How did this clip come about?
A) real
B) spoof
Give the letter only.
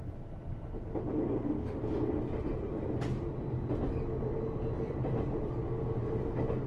A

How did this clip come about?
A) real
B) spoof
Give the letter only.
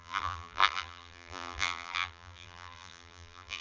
B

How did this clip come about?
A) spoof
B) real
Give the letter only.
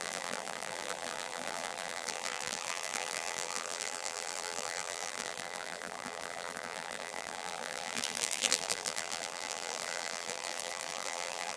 A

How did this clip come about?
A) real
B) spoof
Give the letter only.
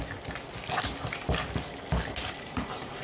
A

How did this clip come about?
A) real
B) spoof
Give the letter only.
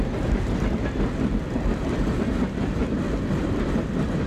A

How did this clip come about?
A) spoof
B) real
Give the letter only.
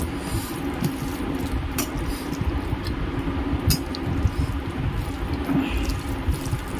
B